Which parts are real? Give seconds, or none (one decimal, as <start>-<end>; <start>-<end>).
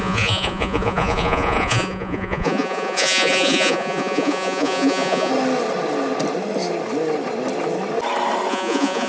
5.3-8.5